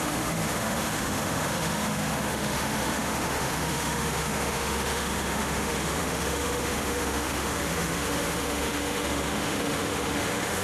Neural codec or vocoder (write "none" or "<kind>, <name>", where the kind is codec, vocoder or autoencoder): autoencoder, DAC-VAE